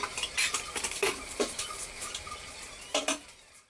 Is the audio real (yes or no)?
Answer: no